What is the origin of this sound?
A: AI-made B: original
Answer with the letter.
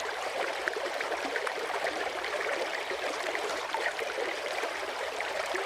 A